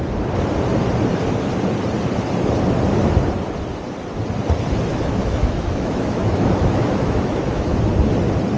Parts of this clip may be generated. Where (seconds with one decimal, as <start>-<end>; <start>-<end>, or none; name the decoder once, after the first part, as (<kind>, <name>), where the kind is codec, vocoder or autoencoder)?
4.9-7.7 (autoencoder, DAC-VAE)